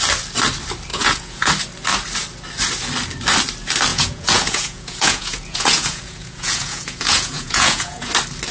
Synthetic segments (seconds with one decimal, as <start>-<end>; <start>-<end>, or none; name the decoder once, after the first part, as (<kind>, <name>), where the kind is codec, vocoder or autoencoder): 0.9-1.5 (vocoder, Vocos); 3.9-8.1